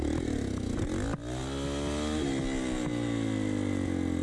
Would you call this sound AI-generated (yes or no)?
no